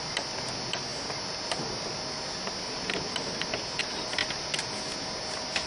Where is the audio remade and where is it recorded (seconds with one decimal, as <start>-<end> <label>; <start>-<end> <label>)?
0.0-5.7 recorded